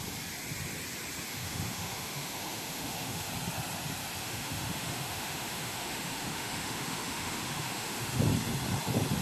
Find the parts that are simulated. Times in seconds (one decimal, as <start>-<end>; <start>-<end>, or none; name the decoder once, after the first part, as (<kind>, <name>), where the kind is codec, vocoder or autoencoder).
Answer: 1.3-3.3 (autoencoder, DAC-VAE); 4.2-8.2